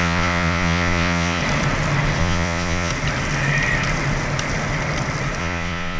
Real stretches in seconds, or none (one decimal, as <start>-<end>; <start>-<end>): 1.4-2.2; 2.9-5.4